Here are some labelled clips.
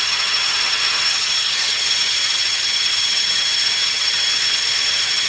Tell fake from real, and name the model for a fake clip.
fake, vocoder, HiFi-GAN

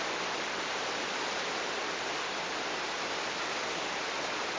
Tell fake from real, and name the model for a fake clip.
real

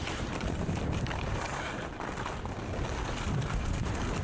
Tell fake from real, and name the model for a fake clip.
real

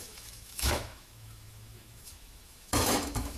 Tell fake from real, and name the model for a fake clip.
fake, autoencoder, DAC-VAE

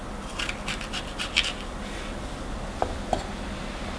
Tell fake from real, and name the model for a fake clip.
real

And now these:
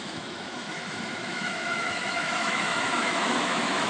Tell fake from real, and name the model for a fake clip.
fake, autoencoder, DAC-VAE